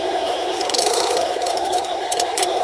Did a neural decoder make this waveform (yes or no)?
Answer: yes